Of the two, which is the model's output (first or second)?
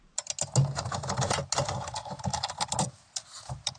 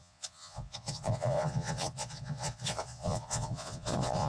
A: second